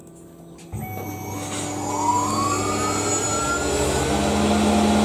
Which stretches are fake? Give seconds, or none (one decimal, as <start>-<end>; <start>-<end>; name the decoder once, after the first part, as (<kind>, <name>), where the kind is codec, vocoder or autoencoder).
none

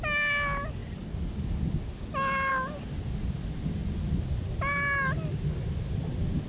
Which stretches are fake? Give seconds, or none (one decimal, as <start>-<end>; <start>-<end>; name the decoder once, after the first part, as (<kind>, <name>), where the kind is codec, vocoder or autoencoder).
none

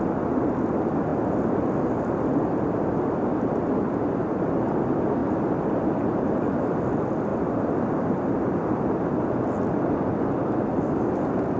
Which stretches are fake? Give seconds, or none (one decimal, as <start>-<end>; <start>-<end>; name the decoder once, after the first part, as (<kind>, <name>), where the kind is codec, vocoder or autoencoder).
5.2-6.8 (vocoder, BigVGAN v2); 7.3-8.6

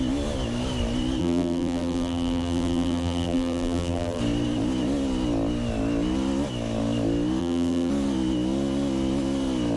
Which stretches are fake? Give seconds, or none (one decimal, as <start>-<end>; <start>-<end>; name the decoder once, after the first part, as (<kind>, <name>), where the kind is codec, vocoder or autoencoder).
1.2-4.2 (vocoder, BigVGAN v2); 7.4-7.9

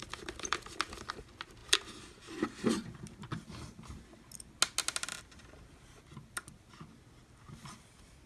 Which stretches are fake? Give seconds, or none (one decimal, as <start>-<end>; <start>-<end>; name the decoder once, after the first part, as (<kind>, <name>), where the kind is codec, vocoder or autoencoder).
0.0-1.1 (vocoder, BigVGAN v2)

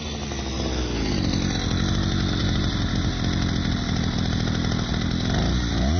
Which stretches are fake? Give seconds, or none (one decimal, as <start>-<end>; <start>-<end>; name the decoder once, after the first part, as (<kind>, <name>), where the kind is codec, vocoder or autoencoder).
2.4-3.1 (vocoder, BigVGAN v2)

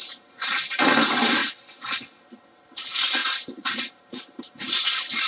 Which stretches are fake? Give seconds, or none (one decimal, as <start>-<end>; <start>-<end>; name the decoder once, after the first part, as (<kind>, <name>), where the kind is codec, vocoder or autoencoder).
0.0-1.4 (vocoder, BigVGAN v2); 2.2-5.3

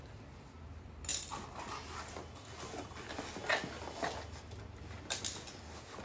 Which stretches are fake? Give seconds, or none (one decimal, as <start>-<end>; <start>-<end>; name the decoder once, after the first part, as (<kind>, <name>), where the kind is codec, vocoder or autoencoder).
none